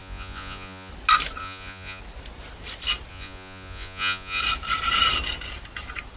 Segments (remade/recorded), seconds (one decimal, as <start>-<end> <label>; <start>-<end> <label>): 0.0-0.9 remade; 0.9-1.4 recorded; 1.4-2.0 remade; 2.0-3.1 recorded; 3.1-4.4 remade; 4.4-6.2 recorded